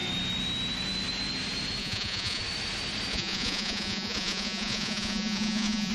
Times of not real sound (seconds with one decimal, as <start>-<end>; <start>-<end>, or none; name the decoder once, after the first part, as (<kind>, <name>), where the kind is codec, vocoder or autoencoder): 1.8-2.4 (vocoder, Vocos); 3.1-5.9